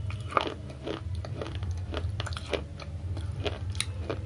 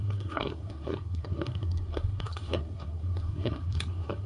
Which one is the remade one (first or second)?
second